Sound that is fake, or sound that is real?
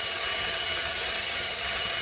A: fake